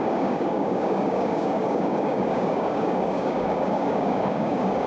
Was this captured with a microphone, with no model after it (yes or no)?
no